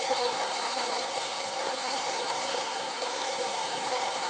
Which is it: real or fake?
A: fake